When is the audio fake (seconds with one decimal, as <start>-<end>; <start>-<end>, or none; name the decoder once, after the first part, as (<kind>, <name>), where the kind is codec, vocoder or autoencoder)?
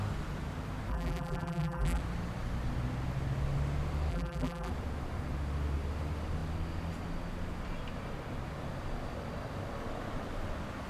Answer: 0.9-2.0 (vocoder, BigVGAN v2); 4.1-4.7